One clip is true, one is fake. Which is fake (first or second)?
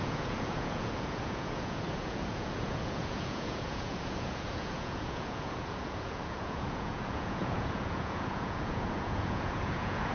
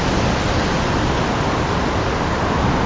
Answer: first